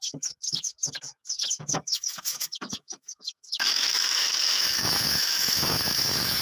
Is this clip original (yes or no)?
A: no